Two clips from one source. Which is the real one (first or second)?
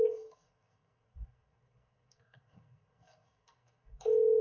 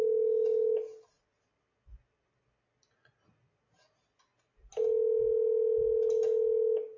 second